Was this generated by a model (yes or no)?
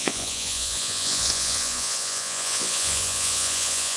yes